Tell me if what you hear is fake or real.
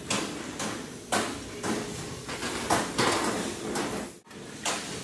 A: real